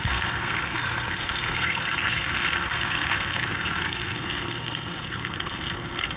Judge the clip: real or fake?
fake